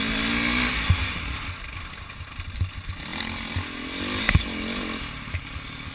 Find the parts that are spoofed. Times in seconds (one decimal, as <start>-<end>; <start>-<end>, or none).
none